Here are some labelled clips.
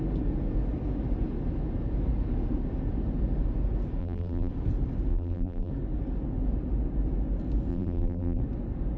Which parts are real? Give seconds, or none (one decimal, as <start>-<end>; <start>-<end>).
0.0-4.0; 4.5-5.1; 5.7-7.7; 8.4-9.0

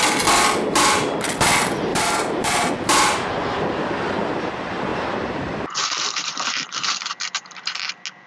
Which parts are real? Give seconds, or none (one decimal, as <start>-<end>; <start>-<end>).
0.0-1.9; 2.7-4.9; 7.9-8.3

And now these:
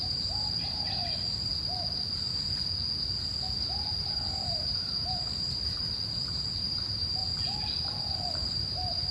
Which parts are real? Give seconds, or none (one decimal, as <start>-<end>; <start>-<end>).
1.5-4.0; 7.2-8.3